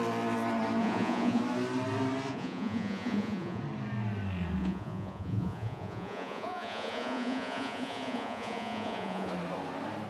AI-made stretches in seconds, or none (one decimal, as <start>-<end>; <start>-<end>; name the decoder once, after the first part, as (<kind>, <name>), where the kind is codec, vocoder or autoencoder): 0.8-1.4 (vocoder, Vocos); 2.3-3.6; 4.6-9.3